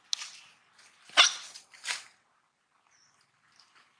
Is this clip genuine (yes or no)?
yes